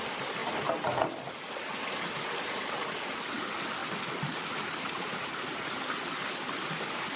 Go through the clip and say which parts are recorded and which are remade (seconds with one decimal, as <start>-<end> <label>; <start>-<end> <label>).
0.0-0.4 recorded; 0.4-2.1 remade; 2.1-3.8 recorded; 3.8-5.6 remade; 5.6-7.2 recorded